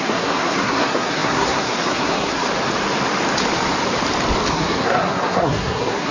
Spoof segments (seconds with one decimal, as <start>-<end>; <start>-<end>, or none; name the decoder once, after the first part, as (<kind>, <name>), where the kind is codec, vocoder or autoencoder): 0.0-2.4 (codec, SNAC); 4.5-6.1